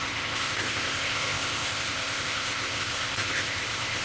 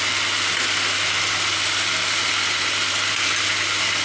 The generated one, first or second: first